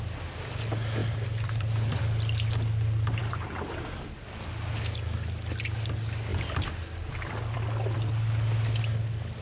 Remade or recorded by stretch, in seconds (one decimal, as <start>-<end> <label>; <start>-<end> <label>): 0.0-1.0 recorded; 1.0-2.0 remade; 2.0-3.2 recorded; 3.2-4.7 remade; 4.7-6.3 recorded; 6.3-8.1 remade; 8.1-9.4 recorded